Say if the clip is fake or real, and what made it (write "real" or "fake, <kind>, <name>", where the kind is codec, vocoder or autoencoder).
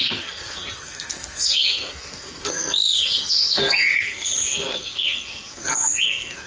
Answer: fake, codec, SNAC